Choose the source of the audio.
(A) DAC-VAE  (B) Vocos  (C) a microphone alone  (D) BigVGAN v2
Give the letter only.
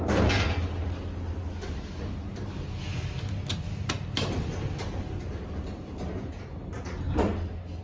C